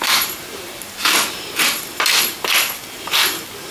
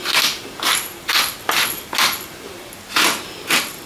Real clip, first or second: second